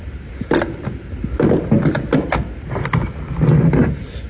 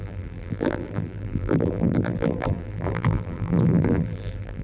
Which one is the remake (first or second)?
second